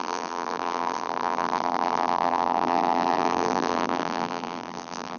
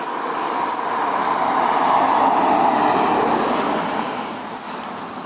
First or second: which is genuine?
second